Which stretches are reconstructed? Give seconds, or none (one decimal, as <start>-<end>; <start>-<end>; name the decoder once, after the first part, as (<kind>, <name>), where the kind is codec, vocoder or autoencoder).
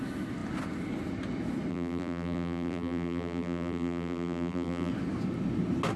1.7-4.9 (vocoder, BigVGAN v2)